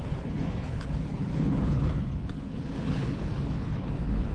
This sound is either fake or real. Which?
fake